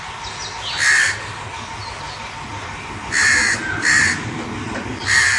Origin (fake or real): real